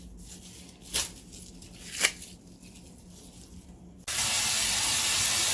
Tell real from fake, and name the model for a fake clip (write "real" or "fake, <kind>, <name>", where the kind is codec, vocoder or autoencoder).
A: real